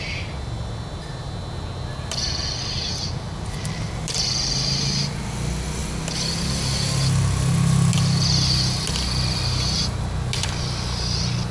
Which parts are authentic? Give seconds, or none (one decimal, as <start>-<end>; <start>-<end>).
0.0-11.5